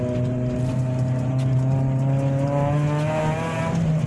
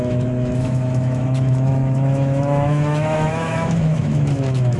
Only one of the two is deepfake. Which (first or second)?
second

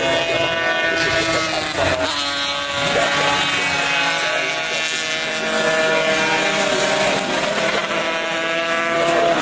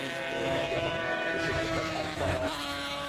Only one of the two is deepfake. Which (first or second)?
second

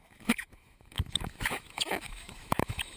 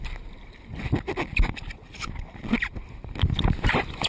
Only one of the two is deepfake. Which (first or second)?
first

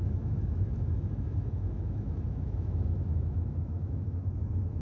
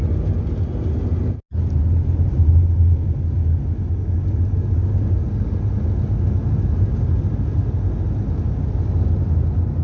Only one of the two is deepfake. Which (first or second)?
first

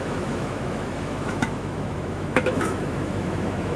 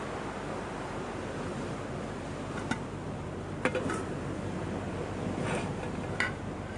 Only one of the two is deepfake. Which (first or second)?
first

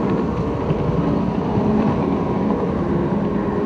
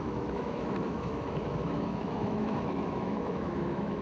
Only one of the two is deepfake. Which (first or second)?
second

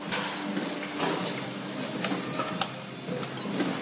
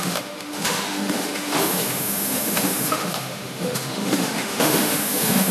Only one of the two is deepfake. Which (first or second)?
second